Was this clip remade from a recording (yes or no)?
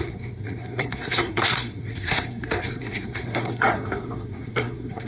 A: yes